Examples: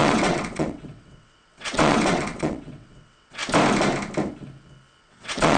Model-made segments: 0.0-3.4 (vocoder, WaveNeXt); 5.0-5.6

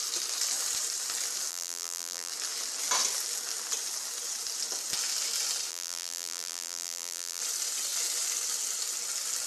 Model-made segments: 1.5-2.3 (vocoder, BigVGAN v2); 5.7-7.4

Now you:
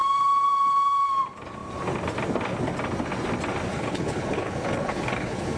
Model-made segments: 3.7-5.6 (codec, HILCodec)